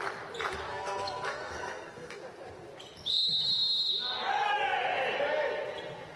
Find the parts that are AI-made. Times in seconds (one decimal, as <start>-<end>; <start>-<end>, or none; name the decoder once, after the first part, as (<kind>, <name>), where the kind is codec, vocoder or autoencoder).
0.7-2.2 (codec, SNAC)